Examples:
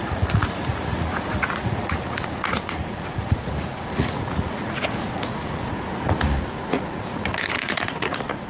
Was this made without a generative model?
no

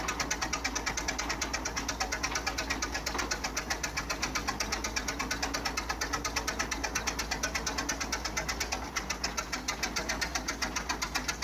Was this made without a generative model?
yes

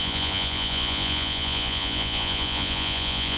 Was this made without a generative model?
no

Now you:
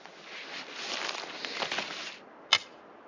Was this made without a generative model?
yes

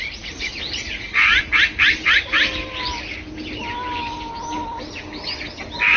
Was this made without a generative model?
yes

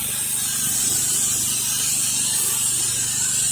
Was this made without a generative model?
yes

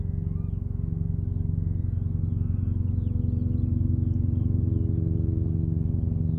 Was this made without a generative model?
yes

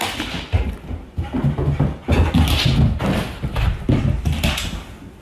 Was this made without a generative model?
yes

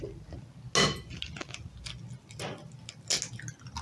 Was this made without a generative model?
yes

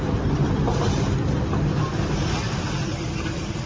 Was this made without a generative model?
yes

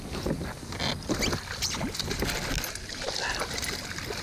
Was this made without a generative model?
yes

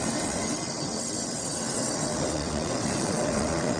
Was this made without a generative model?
no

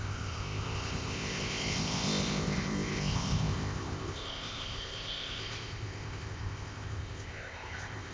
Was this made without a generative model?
no